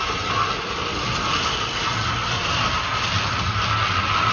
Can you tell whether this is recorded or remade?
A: recorded